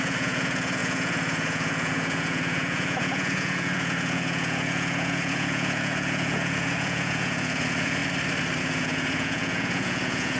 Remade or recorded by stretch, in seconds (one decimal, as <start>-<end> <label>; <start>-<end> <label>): 0.0-8.0 remade; 8.0-8.6 recorded; 8.6-10.4 remade